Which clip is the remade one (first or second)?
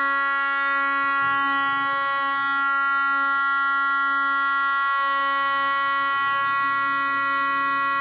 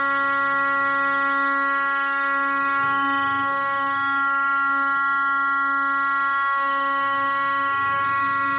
second